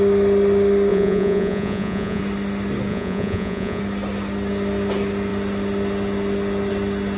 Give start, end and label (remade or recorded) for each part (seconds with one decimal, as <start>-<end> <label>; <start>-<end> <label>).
0.0-0.9 recorded; 0.9-2.2 remade; 2.2-2.9 recorded; 2.9-3.8 remade; 3.8-7.2 recorded